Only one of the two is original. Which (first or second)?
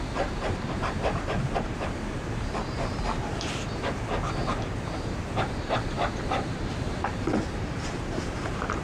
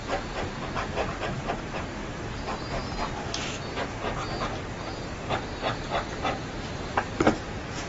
second